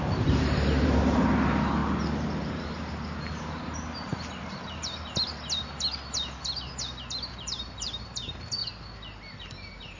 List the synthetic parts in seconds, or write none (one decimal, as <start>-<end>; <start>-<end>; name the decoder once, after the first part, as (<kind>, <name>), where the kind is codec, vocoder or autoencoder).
0.0-4.1 (vocoder, BigVGAN v2); 7.3-8.6; 9.4-10.0